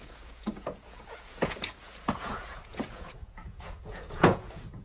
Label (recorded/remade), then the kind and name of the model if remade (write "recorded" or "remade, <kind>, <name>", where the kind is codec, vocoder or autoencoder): remade, vocoder, Vocos